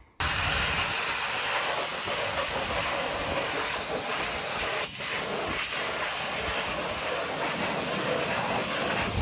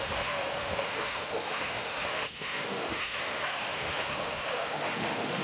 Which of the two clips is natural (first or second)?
first